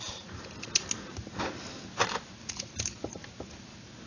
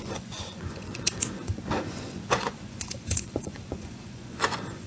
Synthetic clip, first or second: second